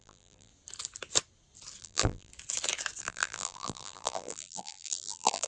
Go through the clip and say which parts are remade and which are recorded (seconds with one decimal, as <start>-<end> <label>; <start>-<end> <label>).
0.0-0.5 remade; 0.5-1.8 recorded; 1.8-2.3 remade; 2.3-3.0 recorded; 3.0-5.5 remade